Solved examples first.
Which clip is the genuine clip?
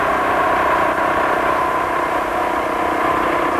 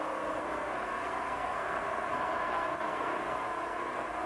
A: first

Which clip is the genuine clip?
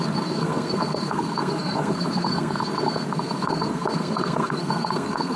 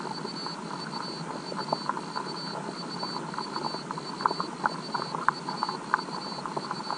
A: second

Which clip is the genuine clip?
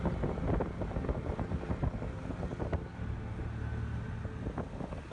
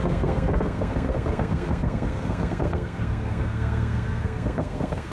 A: first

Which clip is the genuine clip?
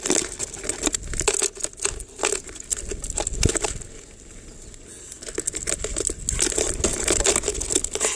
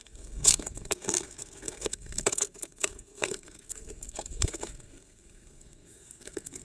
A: first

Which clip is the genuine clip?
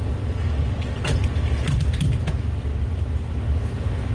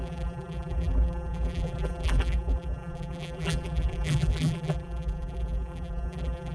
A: first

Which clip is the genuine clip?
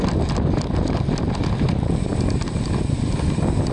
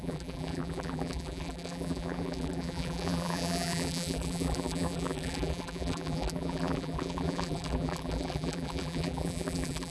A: first